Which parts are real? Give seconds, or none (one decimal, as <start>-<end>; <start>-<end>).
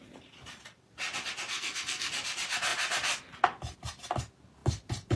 0.0-1.5; 2.1-5.2